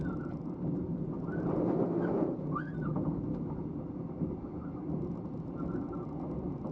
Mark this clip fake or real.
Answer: real